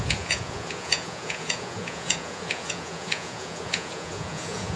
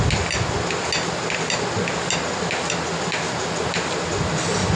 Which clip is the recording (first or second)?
second